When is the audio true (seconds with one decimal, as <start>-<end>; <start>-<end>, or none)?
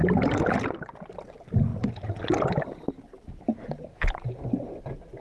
0.0-5.2